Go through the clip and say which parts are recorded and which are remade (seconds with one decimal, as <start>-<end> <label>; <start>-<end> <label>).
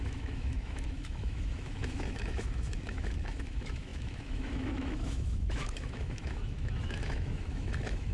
0.0-8.1 remade